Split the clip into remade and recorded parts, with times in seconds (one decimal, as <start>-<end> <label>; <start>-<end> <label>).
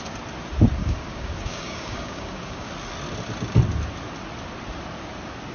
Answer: 0.0-0.8 recorded; 0.8-2.7 remade; 2.7-5.5 recorded